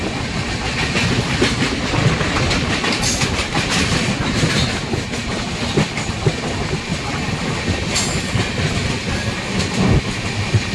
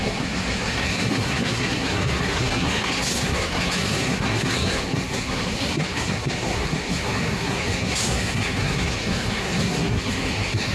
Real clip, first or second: first